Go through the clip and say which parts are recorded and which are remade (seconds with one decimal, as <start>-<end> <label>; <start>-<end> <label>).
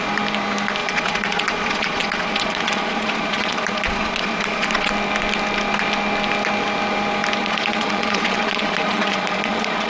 0.0-0.8 recorded; 0.8-4.9 remade; 4.9-7.4 recorded; 7.4-9.9 remade